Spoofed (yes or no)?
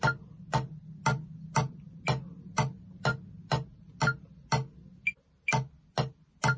no